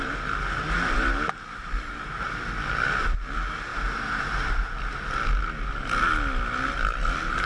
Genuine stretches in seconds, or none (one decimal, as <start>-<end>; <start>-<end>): 0.0-7.5